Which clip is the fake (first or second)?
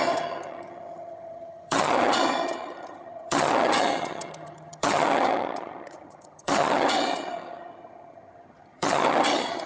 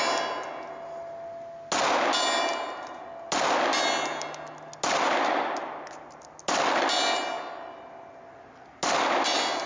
first